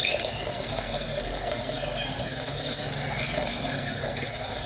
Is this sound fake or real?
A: fake